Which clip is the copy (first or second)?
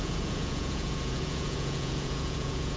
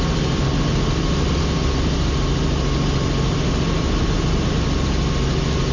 first